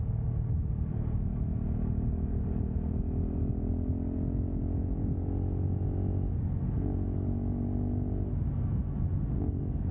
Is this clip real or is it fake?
real